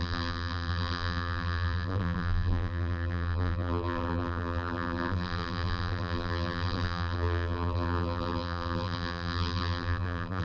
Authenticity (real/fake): fake